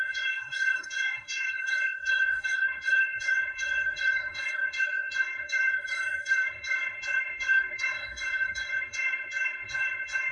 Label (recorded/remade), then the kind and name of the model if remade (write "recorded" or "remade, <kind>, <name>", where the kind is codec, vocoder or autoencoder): remade, codec, SNAC